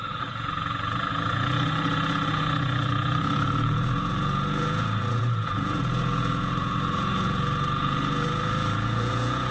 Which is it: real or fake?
fake